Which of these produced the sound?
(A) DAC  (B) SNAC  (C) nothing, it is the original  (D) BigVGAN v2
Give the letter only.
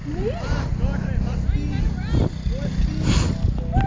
C